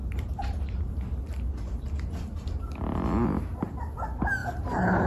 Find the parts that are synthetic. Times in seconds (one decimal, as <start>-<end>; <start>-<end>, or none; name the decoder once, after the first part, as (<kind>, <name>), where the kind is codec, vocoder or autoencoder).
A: 0.0-0.9 (vocoder, BigVGAN v2); 4.4-5.1